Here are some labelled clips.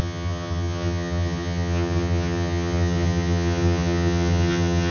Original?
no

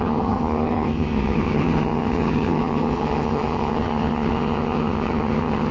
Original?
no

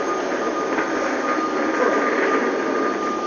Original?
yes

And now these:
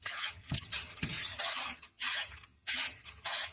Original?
no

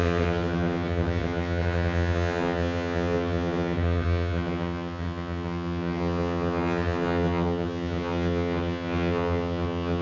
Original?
no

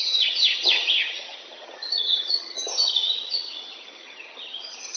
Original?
no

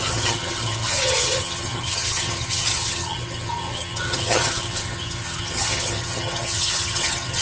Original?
no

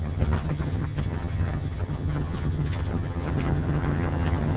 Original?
no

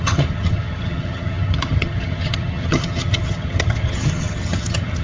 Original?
no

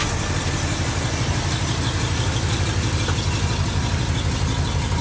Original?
yes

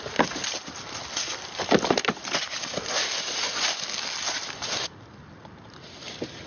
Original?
yes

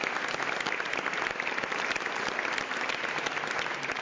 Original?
yes